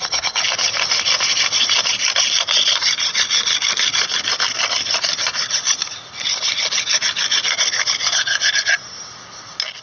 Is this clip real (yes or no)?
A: yes